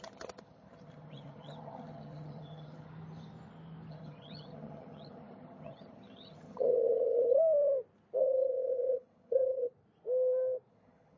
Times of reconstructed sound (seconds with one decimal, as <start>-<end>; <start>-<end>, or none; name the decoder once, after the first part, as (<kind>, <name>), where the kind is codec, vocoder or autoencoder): 0.0-2.9 (vocoder, HiFi-GAN); 3.9-7.4; 8.2-9.7; 10.7-11.2